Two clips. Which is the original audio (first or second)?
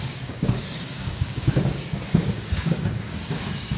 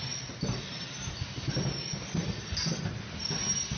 second